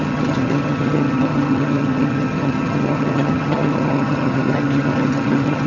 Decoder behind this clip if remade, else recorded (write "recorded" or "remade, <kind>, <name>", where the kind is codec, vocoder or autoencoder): remade, vocoder, HiFi-GAN